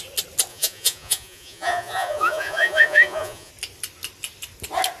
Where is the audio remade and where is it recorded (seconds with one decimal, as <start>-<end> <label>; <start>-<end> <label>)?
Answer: 0.0-0.5 recorded; 0.5-3.5 remade; 3.5-5.0 recorded